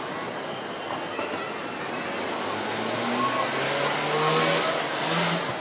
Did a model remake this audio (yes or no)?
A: no